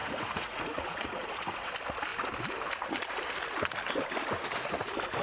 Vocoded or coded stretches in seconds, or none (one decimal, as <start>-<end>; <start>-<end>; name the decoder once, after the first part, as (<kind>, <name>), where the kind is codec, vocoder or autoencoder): 0.0-1.7 (vocoder, Vocos)